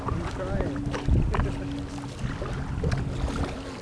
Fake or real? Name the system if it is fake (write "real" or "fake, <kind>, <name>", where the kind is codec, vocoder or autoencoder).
real